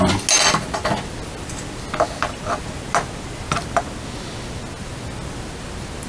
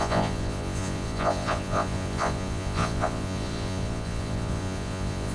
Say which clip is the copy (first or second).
second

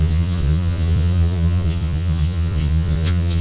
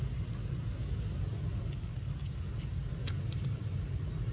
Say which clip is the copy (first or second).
first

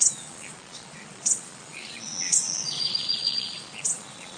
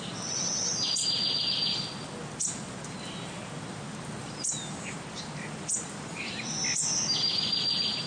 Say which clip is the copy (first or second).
first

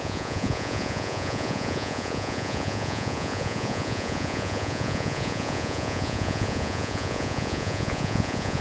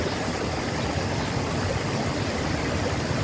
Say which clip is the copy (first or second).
first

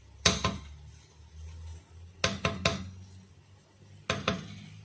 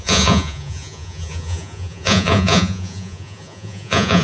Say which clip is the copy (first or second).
second